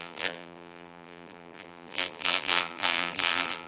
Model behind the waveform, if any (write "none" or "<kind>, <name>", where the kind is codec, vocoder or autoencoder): vocoder, BigVGAN v2